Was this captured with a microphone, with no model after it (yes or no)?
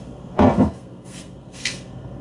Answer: no